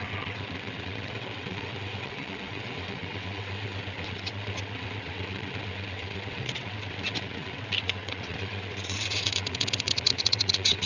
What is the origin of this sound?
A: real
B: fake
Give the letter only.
B